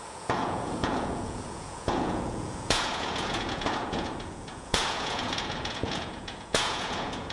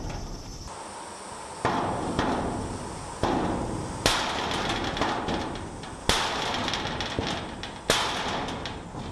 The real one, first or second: second